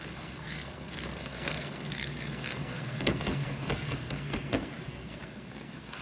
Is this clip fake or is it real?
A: fake